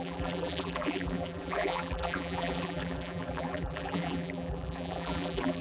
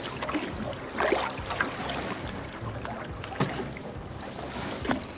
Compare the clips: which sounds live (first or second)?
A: second